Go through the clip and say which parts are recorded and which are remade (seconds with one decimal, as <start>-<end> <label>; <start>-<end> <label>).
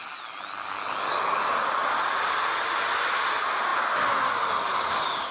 0.0-5.3 recorded